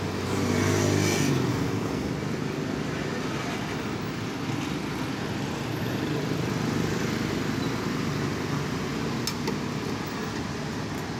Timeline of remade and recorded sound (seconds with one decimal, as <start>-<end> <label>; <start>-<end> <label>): 0.0-1.5 recorded; 1.5-2.1 remade; 2.1-11.2 recorded